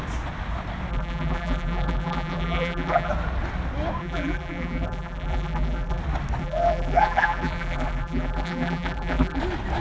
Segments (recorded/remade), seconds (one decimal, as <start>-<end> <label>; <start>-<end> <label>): 0.0-0.9 recorded; 0.9-3.1 remade; 3.1-4.0 recorded; 4.0-6.0 remade; 6.0-6.4 recorded; 6.4-9.4 remade; 9.4-9.8 recorded